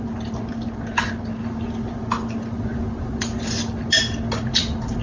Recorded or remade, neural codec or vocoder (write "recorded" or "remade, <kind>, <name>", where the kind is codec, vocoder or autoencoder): recorded